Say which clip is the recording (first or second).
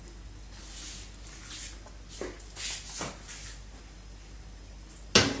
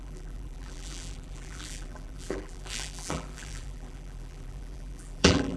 first